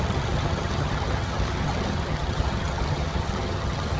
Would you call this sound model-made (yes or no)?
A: yes